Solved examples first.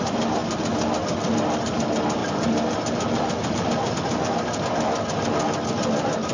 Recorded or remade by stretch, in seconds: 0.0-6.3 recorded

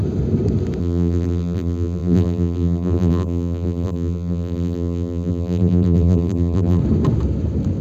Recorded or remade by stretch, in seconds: 0.0-0.8 recorded; 0.8-6.8 remade; 6.8-7.8 recorded

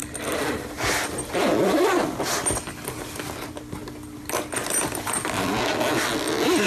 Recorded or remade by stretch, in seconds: 0.0-6.7 recorded

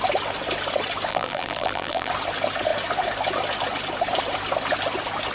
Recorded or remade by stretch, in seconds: 0.0-1.1 recorded; 1.1-2.1 remade; 2.1-5.3 recorded

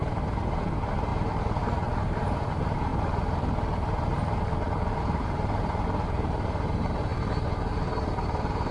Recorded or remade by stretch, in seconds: 0.0-2.9 remade; 2.9-5.0 recorded; 5.0-8.7 remade

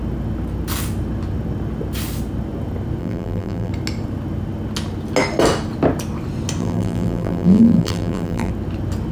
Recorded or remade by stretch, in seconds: 0.0-3.0 recorded; 3.0-3.7 remade; 3.7-6.6 recorded; 6.6-8.5 remade; 8.5-9.1 recorded

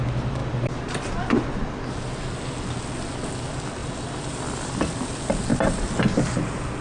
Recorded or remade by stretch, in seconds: 0.0-3.8 recorded; 3.8-4.7 remade; 4.7-6.8 recorded